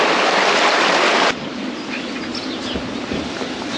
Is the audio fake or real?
real